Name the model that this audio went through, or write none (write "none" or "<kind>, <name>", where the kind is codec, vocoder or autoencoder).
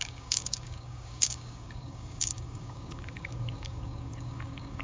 codec, DAC